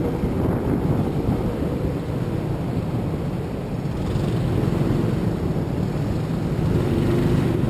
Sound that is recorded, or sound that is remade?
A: recorded